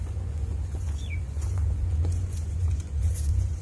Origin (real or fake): fake